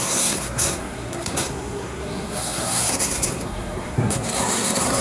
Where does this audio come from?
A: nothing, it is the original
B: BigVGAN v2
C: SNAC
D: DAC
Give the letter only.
C